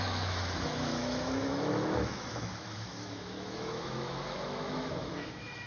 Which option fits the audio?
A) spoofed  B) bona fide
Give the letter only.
A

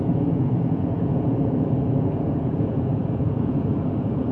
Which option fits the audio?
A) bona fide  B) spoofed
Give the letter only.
B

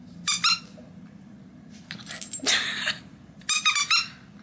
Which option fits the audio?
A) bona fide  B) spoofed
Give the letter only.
A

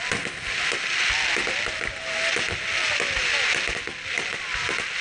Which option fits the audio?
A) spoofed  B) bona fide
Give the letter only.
B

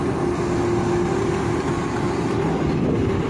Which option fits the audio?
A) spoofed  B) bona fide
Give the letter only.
B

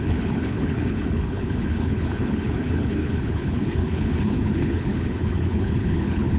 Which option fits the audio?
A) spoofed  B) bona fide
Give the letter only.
A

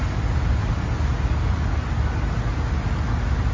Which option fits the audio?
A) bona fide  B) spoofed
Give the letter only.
A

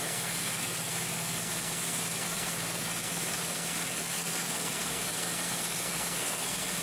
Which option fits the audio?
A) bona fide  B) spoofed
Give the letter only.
B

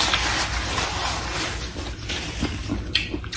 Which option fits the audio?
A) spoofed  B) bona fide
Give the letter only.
B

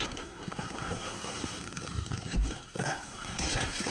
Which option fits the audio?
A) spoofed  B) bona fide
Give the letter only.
A